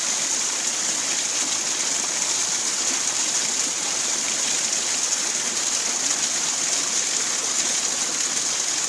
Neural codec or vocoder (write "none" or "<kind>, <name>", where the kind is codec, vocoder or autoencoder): none